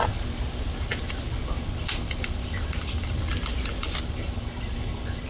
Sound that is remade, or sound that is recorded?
recorded